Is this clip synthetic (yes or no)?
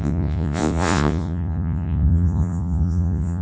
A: yes